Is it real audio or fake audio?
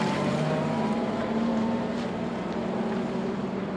fake